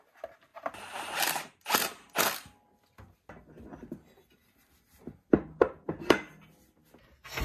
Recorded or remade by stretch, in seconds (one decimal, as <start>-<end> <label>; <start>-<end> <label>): 0.0-7.4 recorded